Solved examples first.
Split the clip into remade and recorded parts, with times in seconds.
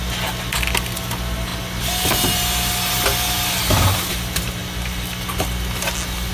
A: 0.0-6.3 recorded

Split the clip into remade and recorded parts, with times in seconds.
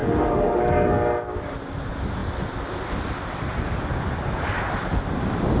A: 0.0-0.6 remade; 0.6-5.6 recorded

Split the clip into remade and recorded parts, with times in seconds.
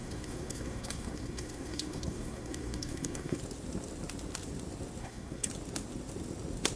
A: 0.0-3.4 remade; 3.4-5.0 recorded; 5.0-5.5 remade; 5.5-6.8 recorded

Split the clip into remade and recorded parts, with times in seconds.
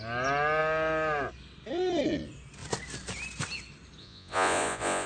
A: 0.0-4.0 recorded; 4.0-5.1 remade